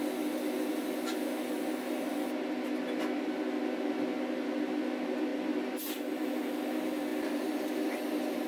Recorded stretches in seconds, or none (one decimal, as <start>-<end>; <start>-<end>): 0.0-7.1; 8.0-8.5